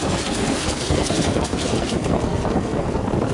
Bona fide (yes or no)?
no